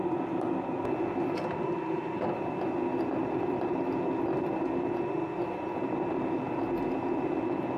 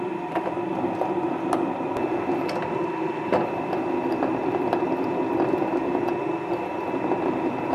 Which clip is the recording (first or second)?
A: first